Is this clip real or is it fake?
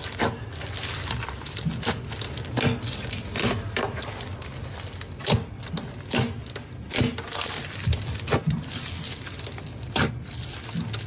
real